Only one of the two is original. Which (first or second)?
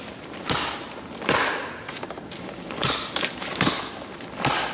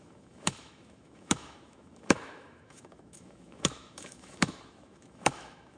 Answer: first